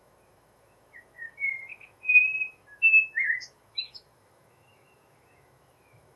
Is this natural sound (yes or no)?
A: no